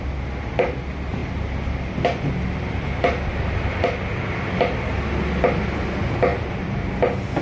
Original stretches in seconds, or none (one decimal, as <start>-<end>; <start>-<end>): 0.0-6.3; 6.9-7.4